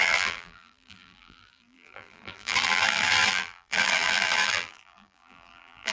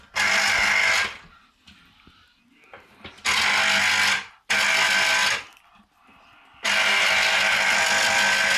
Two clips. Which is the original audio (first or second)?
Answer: second